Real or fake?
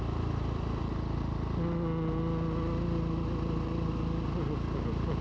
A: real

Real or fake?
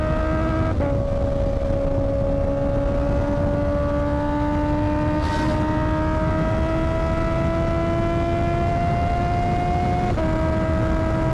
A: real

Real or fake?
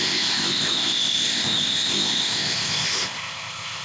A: fake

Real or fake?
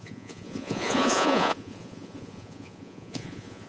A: fake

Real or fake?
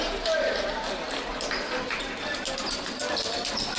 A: fake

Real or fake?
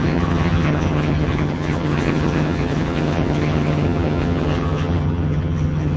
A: fake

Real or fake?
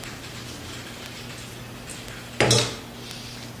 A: real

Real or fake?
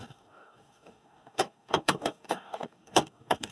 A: fake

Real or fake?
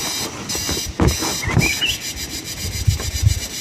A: real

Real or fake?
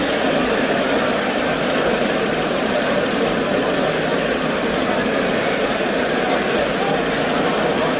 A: real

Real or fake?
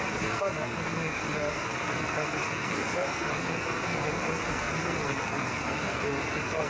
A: fake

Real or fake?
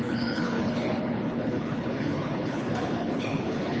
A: fake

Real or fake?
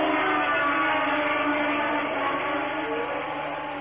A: real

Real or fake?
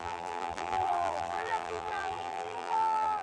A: fake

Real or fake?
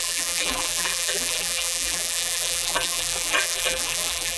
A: fake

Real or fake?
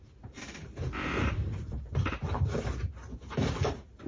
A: fake